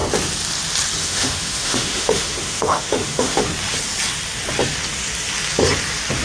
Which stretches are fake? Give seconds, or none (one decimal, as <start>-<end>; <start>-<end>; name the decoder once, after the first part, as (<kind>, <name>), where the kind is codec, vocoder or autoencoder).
1.0-3.5 (autoencoder, DAC-VAE)